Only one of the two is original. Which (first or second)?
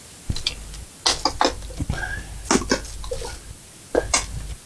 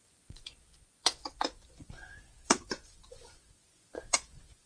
first